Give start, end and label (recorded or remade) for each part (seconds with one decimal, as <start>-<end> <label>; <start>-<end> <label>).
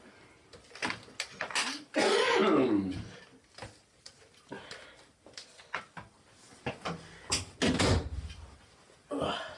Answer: 0.0-9.6 recorded